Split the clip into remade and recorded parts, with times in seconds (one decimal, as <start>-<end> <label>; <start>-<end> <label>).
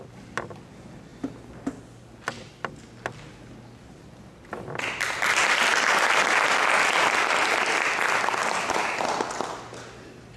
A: 0.0-10.4 recorded